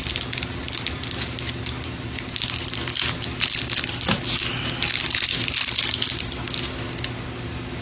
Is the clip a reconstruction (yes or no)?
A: no